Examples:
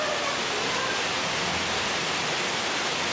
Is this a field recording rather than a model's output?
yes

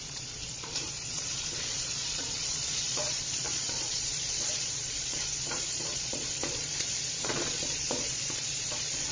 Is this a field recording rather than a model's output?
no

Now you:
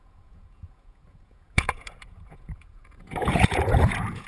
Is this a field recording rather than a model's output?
no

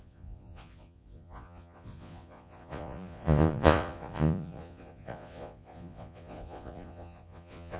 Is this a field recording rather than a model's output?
no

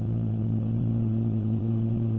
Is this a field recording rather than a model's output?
no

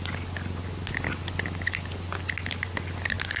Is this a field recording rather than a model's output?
yes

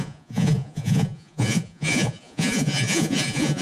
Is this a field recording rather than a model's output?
no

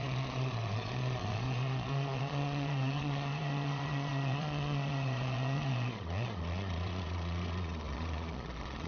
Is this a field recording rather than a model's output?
no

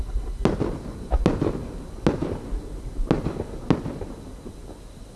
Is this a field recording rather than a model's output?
yes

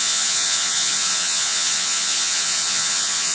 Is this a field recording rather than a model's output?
no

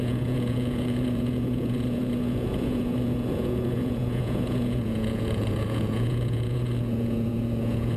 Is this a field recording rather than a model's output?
no